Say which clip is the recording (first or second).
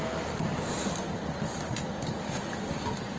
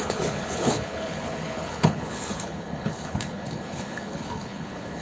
first